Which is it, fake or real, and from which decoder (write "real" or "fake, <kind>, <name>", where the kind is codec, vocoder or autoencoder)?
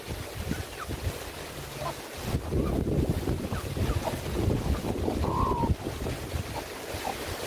real